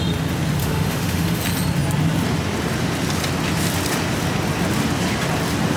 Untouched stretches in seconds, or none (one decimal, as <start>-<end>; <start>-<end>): 0.0-0.6; 1.4-5.8